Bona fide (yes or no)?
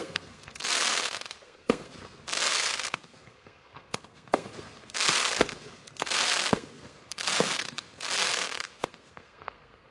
no